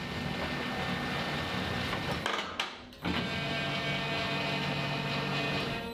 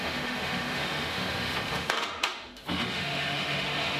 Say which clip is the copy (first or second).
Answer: second